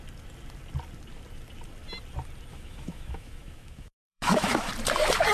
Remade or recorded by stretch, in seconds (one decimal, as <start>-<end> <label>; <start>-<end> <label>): 0.0-2.5 recorded; 2.5-4.7 remade; 4.7-5.3 recorded